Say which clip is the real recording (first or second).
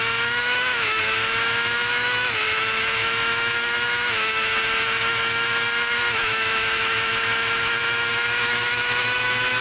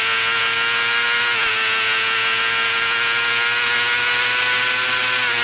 second